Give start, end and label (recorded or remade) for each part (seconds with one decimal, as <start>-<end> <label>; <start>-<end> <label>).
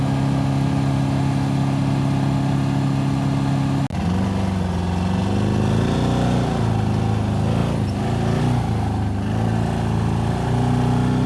0.0-11.3 recorded